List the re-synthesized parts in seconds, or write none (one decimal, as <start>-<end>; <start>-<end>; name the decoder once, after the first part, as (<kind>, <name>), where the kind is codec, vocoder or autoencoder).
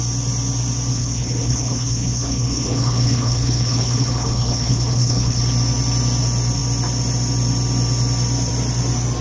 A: 0.9-5.4 (codec, HILCodec)